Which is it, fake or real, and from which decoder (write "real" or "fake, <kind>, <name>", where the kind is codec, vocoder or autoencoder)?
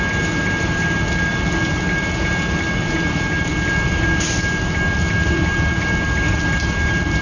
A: real